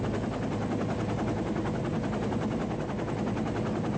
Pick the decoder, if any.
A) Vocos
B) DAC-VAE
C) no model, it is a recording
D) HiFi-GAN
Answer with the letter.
C